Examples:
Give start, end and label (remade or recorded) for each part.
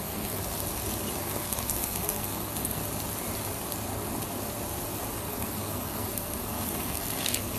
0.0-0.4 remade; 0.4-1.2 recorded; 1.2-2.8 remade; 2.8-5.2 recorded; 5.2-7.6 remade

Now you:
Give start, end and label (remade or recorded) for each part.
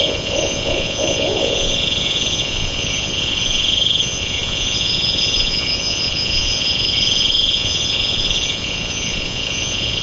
0.0-10.0 remade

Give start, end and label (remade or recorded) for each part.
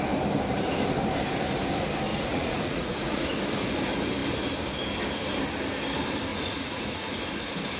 0.0-2.1 recorded; 2.1-3.3 remade; 3.3-6.3 recorded; 6.3-7.2 remade; 7.2-7.8 recorded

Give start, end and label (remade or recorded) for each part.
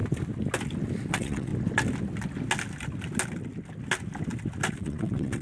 0.0-1.1 recorded; 1.1-1.5 remade; 1.5-4.7 recorded; 4.7-5.4 remade